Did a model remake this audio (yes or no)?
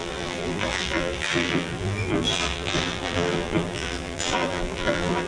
yes